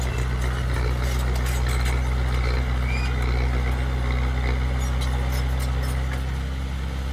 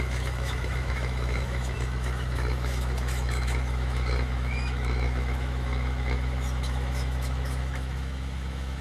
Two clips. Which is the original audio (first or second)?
first